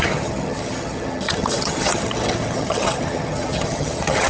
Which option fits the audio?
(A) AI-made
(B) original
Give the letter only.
A